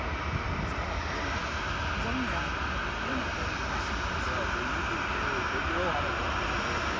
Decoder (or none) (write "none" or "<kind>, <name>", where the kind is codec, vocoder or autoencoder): none